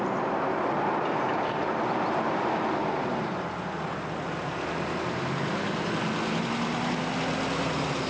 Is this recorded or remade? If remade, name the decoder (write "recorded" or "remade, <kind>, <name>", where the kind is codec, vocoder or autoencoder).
recorded